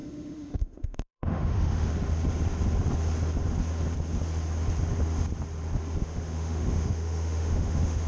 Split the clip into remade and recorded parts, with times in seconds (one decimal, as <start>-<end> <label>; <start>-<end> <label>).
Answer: 0.0-1.9 remade; 1.9-6.0 recorded; 6.0-8.1 remade